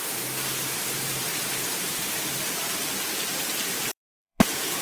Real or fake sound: fake